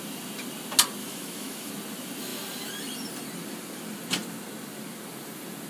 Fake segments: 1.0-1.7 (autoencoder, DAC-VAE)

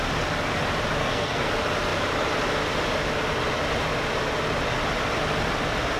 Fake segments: 1.0-1.5 (codec, SNAC)

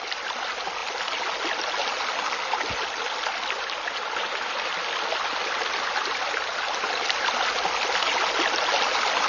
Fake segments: none

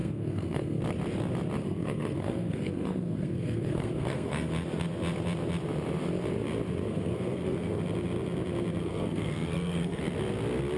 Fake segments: 0.0-0.8 (codec, SNAC); 1.6-4.5; 6.9-7.8; 8.8-10.0